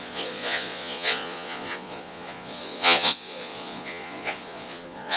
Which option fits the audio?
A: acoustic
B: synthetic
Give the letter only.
B